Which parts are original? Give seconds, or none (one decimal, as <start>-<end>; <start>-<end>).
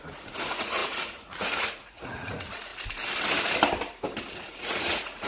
2.7-4.3